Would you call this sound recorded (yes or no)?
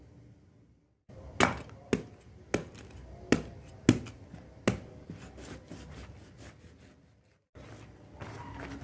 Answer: yes